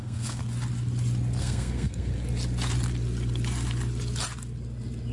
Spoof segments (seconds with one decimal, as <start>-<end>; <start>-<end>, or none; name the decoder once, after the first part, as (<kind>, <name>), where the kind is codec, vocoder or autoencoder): 0.0-0.4 (codec, SNAC); 1.4-2.1

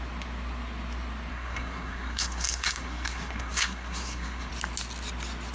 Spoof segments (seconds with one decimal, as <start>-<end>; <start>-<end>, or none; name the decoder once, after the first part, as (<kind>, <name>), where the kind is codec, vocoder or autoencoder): 1.3-4.5 (codec, SNAC)

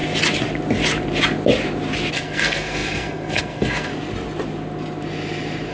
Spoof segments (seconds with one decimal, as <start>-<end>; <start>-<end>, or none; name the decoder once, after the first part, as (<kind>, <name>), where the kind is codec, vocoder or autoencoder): 2.1-3.9 (codec, SNAC)

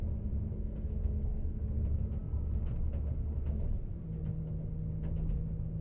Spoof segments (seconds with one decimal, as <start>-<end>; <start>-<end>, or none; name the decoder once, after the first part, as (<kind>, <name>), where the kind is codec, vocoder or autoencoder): 0.5-1.6 (codec, SNAC)

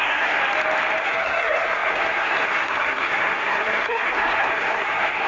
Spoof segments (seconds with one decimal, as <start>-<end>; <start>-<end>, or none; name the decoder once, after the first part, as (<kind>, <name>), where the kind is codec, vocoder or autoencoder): 0.0-0.4 (codec, SNAC); 1.0-5.3

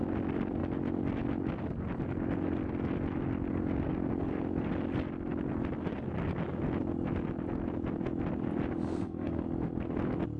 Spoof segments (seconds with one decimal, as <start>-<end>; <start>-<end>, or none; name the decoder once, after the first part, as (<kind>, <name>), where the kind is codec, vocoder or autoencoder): 8.9-9.4 (codec, SNAC)

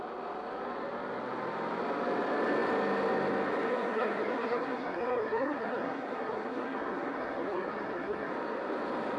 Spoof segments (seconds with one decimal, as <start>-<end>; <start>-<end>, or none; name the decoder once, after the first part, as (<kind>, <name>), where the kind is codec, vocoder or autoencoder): 3.7-8.3 (codec, SNAC)

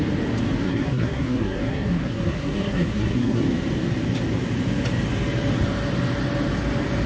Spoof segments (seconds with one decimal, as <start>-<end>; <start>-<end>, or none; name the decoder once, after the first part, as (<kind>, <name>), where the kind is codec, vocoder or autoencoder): 0.6-3.4 (codec, SNAC)